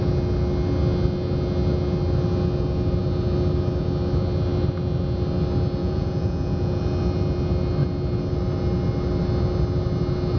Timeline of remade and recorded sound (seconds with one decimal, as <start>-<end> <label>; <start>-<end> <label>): 0.0-5.8 recorded; 5.8-6.8 remade; 6.8-10.4 recorded